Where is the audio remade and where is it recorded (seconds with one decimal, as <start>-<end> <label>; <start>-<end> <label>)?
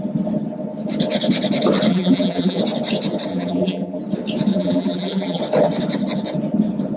0.0-1.9 recorded; 1.9-2.6 remade; 2.6-3.3 recorded; 3.3-4.0 remade; 4.0-4.5 recorded; 4.5-5.4 remade; 5.4-7.0 recorded